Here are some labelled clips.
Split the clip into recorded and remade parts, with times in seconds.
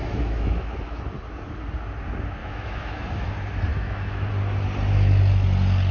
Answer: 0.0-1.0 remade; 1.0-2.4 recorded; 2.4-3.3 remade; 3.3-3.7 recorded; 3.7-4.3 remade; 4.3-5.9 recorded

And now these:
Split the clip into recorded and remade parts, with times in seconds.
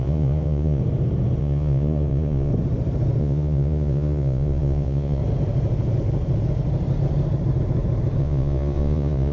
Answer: 0.0-0.8 remade; 0.8-1.4 recorded; 1.4-2.5 remade; 2.5-3.2 recorded; 3.2-5.2 remade; 5.2-8.2 recorded; 8.2-9.3 remade